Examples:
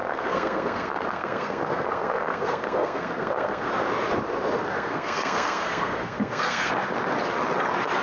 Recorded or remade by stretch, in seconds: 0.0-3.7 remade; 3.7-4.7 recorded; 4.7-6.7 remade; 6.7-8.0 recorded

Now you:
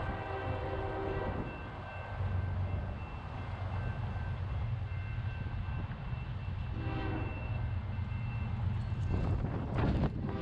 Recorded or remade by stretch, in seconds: 0.0-10.4 recorded

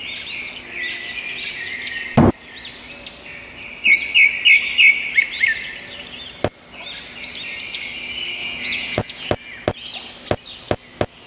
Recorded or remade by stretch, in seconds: 0.0-8.4 recorded; 8.4-9.3 remade; 9.3-11.3 recorded

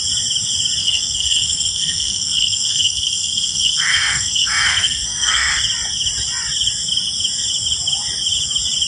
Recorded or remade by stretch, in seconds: 0.0-0.8 recorded; 0.8-5.5 remade; 5.5-8.9 recorded